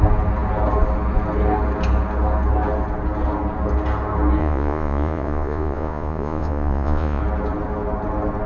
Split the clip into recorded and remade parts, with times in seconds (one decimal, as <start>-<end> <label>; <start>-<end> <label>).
0.0-4.4 recorded; 4.4-7.2 remade; 7.2-8.5 recorded

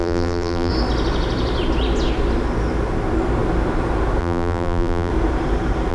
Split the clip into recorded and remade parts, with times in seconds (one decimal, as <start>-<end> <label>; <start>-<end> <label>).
0.0-0.7 remade; 0.7-4.2 recorded; 4.2-5.1 remade; 5.1-5.9 recorded

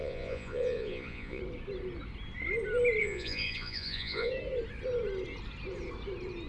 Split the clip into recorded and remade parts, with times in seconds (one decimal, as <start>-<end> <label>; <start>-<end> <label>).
0.0-1.4 remade; 1.4-3.0 recorded; 3.0-4.3 remade; 4.3-6.5 recorded

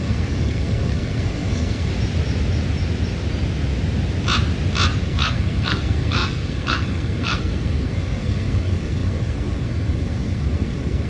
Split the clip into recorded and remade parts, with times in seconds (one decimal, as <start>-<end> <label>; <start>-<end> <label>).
0.0-1.9 remade; 1.9-5.0 recorded; 5.0-11.1 remade

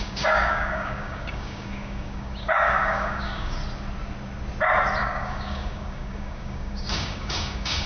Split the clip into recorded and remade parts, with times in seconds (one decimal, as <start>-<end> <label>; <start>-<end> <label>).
0.0-3.6 remade; 3.6-5.0 recorded; 5.0-7.9 remade

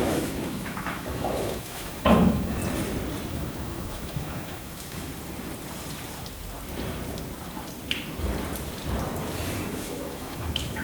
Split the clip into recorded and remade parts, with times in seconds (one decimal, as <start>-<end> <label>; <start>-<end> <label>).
0.0-2.6 remade; 2.6-3.3 recorded; 3.3-5.1 remade; 5.1-9.7 recorded; 9.7-10.8 remade